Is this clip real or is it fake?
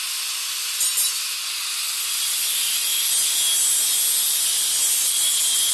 real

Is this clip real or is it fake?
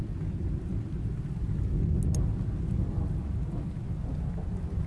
real